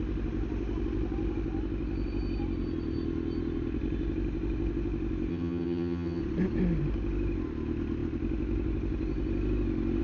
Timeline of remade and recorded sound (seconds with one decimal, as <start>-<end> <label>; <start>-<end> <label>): 0.0-5.3 recorded; 5.3-6.2 remade; 6.2-10.0 recorded